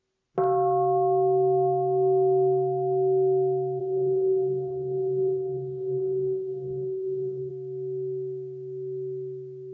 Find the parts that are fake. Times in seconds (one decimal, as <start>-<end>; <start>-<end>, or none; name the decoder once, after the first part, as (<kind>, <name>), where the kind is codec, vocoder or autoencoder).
3.8-7.5 (codec, DAC)